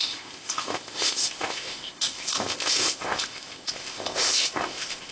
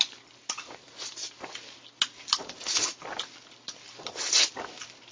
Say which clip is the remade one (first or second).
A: first